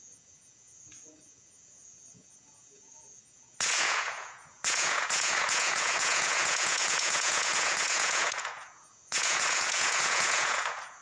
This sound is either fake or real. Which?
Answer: fake